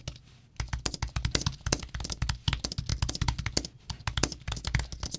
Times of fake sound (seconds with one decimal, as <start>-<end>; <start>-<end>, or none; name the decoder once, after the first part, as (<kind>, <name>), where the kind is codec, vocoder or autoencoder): none